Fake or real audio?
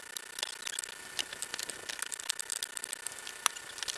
real